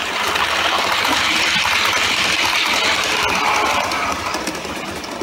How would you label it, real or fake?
real